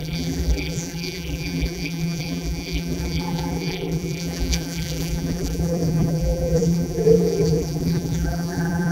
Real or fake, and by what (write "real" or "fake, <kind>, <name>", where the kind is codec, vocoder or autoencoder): fake, vocoder, BigVGAN v2